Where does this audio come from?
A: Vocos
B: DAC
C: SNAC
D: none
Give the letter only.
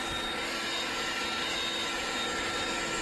D